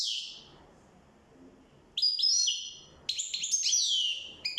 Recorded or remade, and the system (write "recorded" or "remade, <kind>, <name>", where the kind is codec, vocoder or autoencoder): recorded